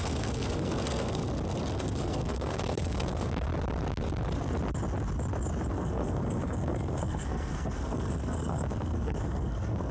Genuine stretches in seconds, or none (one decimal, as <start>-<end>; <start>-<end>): 1.2-1.8; 3.5-5.7